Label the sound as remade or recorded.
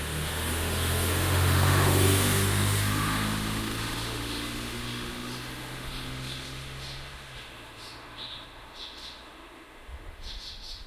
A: remade